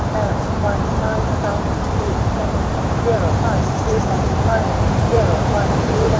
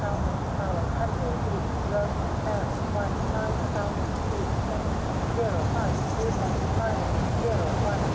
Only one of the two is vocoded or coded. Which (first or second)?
first